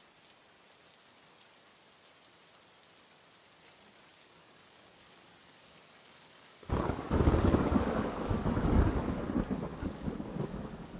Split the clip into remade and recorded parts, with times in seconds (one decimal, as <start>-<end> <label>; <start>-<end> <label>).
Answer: 0.0-4.1 recorded; 4.1-9.2 remade; 9.2-9.7 recorded; 9.7-11.0 remade